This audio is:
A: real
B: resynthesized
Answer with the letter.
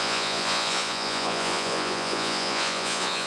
B